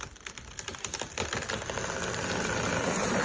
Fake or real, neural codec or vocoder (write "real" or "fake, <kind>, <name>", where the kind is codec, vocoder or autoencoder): real